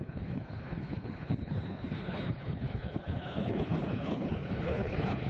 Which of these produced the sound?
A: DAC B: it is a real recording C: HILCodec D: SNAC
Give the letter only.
C